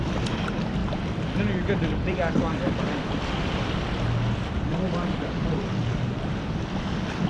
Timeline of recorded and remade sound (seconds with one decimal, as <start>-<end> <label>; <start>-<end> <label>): 0.0-7.3 recorded